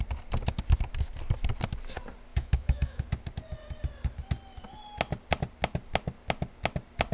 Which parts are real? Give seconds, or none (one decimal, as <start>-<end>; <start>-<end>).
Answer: 0.0-2.3; 3.0-7.1